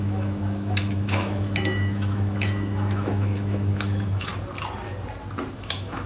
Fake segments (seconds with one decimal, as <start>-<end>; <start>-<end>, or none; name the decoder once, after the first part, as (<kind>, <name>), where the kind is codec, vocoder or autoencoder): 0.0-4.3 (autoencoder, DAC-VAE); 5.5-6.1